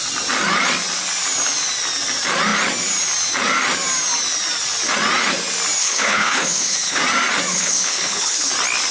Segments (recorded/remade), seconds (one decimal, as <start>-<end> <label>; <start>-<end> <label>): 0.0-5.8 recorded; 5.8-7.0 remade; 7.0-7.5 recorded; 7.5-8.5 remade; 8.5-8.9 recorded